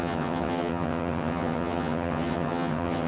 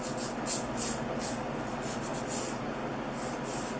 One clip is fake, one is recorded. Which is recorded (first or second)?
second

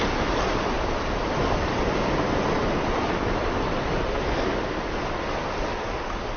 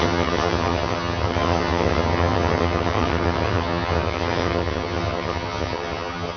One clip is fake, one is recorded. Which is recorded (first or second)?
first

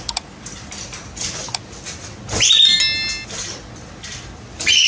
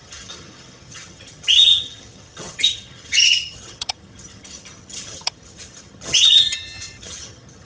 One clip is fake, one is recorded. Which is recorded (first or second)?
first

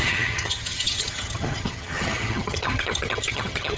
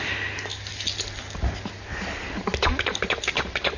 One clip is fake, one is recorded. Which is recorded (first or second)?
second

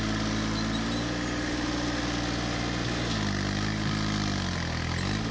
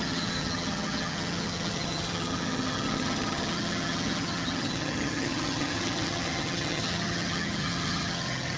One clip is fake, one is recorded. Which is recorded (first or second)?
first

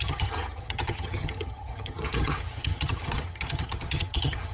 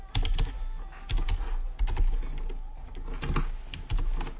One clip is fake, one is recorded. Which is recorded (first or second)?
second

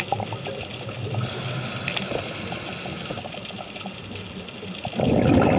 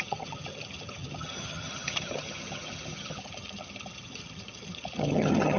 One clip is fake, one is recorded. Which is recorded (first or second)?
first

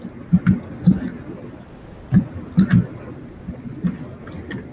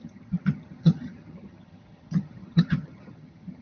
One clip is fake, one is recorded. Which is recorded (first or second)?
first